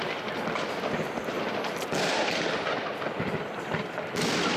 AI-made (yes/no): no